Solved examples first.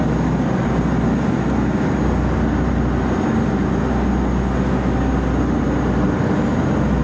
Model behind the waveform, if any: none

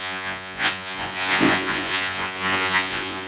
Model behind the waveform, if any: vocoder, Vocos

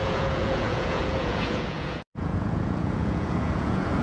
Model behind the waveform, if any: vocoder, Vocos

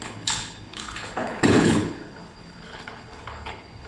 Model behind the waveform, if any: codec, HILCodec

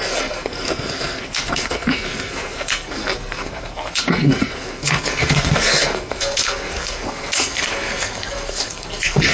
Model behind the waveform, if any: codec, SNAC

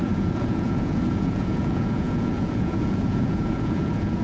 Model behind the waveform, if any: vocoder, Vocos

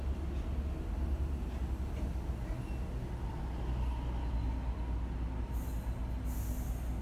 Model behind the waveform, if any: none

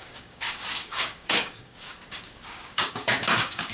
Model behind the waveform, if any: codec, DAC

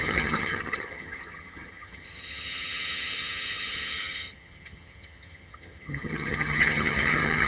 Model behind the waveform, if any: vocoder, HiFi-GAN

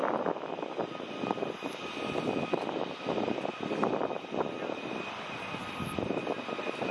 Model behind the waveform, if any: none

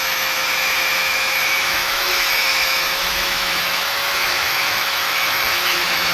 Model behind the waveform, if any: autoencoder, DAC-VAE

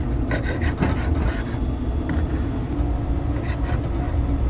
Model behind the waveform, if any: none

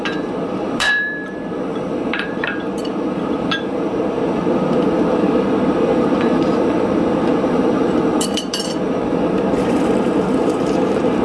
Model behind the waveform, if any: vocoder, BigVGAN v2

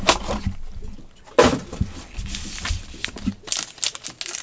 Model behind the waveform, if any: none